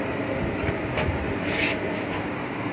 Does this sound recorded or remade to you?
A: recorded